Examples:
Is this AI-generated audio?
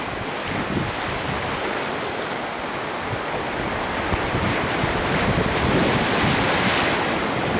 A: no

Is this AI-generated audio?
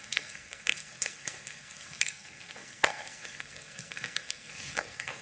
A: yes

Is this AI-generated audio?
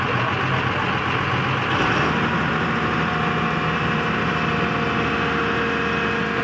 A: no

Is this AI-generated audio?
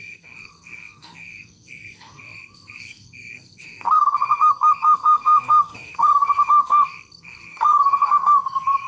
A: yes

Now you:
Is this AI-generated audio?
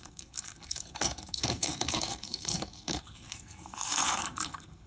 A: yes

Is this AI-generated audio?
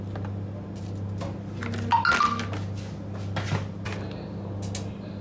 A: no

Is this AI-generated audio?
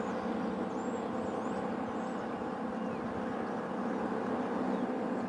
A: no